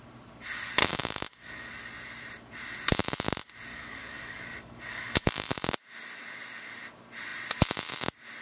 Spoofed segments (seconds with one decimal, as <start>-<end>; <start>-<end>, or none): 0.8-1.7; 3.7-5.5